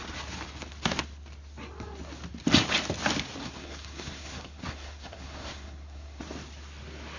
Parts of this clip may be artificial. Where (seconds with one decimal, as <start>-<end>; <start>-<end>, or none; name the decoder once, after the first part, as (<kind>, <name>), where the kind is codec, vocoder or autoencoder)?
3.4-6.2 (codec, SNAC)